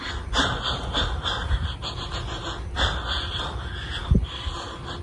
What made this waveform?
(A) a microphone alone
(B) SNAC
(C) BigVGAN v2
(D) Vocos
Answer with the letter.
A